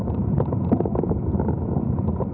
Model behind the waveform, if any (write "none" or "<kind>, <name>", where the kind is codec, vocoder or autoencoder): none